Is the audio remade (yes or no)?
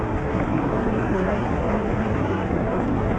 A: yes